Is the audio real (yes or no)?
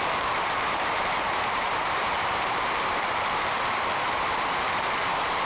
no